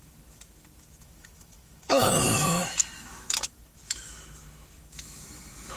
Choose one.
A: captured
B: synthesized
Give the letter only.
B